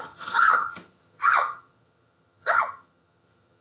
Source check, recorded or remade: remade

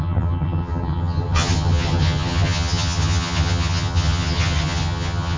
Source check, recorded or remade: remade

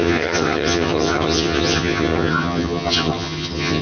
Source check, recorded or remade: remade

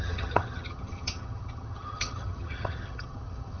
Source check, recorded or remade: remade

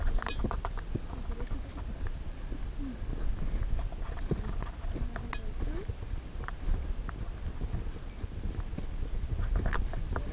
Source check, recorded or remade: recorded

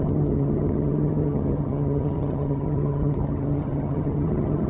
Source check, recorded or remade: remade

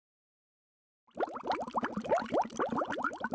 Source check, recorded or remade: recorded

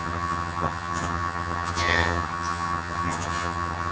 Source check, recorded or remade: remade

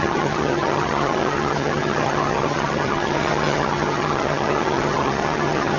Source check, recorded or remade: remade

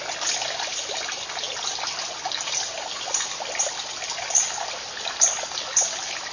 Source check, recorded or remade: recorded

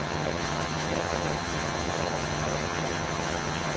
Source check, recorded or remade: remade